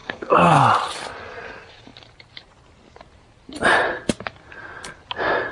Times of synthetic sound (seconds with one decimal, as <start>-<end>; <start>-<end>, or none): 0.0-0.6